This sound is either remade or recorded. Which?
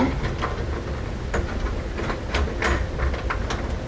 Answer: recorded